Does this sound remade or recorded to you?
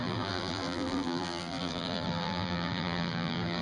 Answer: remade